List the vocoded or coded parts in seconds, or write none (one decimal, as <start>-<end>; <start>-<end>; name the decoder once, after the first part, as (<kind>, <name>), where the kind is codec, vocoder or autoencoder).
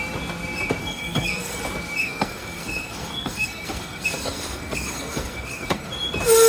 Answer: 0.8-1.6 (codec, SNAC); 2.0-5.9